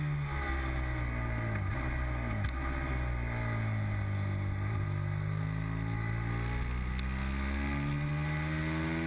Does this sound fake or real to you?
real